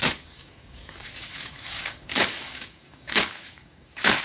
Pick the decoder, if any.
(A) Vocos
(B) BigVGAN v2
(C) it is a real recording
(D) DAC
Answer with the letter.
D